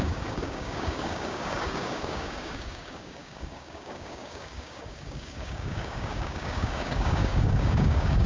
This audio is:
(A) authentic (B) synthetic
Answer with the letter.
B